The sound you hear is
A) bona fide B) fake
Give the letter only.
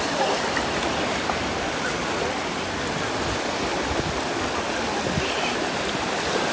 A